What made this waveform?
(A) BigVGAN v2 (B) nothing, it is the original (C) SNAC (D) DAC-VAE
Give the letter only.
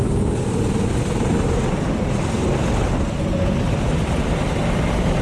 B